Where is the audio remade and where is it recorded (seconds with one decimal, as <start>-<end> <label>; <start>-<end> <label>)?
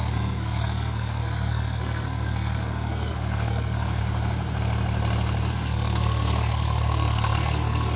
0.0-4.0 remade; 4.0-5.5 recorded; 5.5-8.0 remade